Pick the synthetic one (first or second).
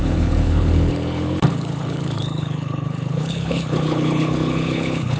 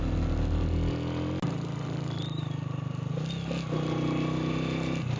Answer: first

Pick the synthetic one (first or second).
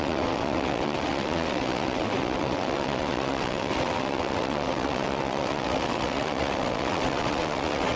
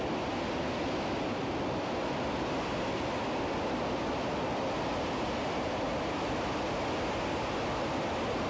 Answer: first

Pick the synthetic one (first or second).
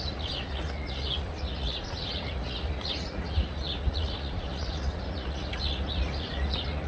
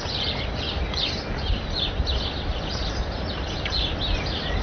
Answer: first